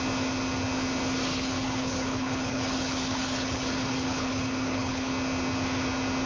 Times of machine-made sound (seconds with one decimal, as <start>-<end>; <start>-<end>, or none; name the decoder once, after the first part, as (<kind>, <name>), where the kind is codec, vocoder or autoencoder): 1.3-5.1 (codec, HILCodec)